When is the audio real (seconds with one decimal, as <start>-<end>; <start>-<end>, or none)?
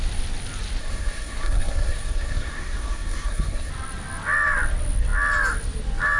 0.0-0.8; 3.7-6.2